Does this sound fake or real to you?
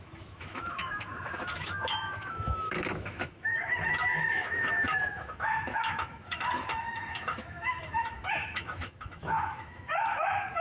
fake